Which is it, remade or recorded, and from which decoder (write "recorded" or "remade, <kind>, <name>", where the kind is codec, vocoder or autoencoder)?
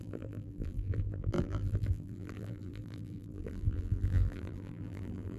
remade, vocoder, BigVGAN v2